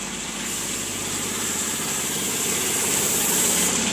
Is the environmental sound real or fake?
fake